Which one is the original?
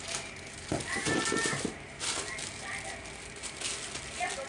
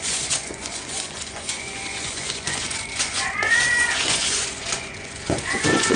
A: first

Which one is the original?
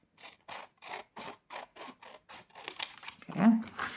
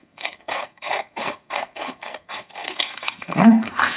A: first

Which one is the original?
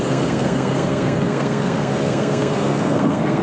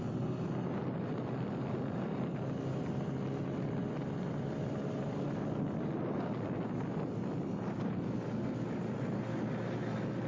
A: second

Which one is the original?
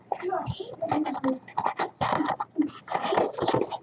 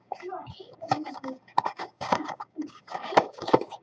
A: first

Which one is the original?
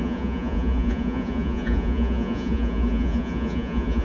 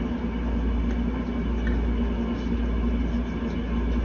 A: second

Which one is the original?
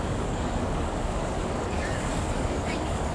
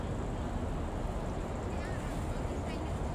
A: second